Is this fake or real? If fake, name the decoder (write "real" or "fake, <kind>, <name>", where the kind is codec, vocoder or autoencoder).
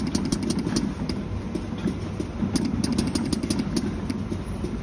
real